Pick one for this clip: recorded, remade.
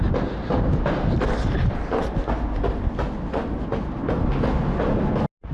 recorded